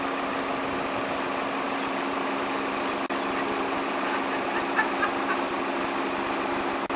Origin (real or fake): real